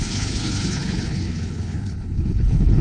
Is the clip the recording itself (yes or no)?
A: no